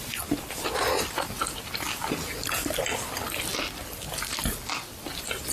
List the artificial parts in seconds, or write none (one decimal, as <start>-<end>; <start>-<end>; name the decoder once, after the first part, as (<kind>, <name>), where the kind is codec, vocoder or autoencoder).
none